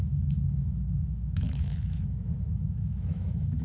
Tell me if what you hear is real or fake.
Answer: fake